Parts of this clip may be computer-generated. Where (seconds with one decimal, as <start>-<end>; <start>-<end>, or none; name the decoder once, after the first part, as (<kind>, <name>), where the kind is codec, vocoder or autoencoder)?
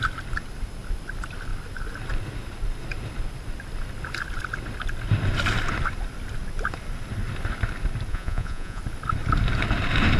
8.1-8.8 (vocoder, Vocos)